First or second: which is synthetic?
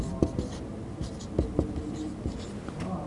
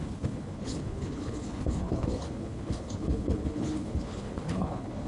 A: second